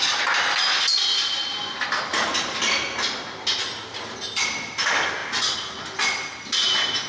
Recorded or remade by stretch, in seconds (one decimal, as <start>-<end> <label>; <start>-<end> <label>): 0.0-7.1 recorded

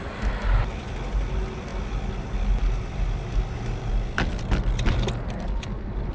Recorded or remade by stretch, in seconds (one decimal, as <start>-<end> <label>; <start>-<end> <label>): 0.0-6.1 recorded

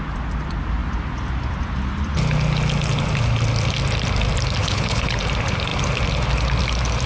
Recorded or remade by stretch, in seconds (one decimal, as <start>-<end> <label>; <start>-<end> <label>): 0.0-4.6 recorded; 4.6-5.2 remade; 5.2-7.1 recorded

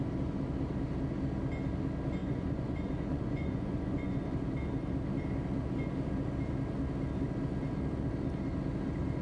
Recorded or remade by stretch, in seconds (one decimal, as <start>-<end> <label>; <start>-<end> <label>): 0.0-2.2 recorded; 2.2-4.2 remade; 4.2-9.2 recorded